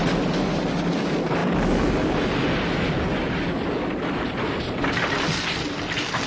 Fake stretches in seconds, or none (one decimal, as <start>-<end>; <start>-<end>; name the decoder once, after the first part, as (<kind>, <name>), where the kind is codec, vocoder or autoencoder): none